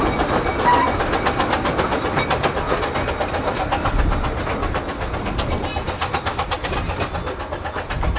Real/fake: real